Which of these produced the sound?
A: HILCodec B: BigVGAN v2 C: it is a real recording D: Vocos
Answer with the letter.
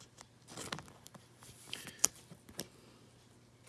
C